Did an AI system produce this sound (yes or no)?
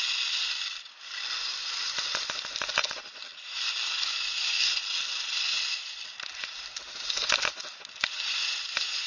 no